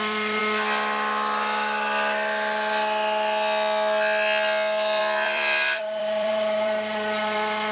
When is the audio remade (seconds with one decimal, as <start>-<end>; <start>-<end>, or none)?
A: 0.0-0.4; 5.0-7.7